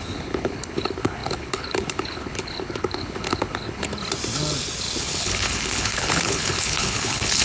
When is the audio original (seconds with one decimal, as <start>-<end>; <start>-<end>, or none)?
3.9-5.0